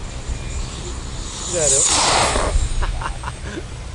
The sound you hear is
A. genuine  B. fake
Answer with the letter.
A